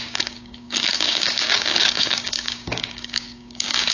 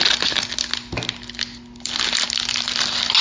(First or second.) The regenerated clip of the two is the first